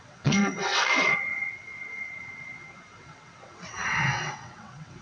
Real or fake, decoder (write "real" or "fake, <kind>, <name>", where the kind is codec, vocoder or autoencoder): fake, vocoder, WaveNeXt